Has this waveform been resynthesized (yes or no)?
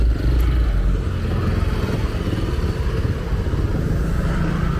no